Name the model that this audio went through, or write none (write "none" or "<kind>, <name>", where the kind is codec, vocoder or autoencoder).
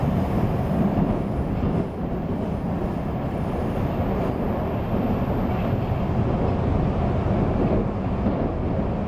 none